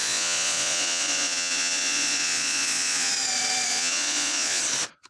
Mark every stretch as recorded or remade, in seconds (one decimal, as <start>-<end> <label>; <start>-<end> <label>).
0.0-3.1 remade; 3.1-3.7 recorded; 3.7-4.6 remade; 4.6-5.1 recorded